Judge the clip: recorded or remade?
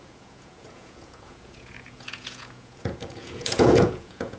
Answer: remade